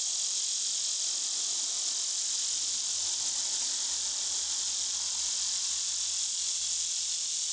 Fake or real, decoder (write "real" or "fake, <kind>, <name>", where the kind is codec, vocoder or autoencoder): real